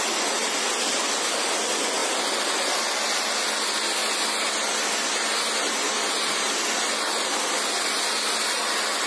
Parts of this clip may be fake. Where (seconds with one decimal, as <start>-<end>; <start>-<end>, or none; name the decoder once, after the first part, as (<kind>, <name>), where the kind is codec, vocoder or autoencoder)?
none